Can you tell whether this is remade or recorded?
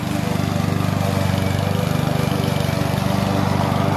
recorded